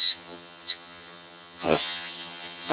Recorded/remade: remade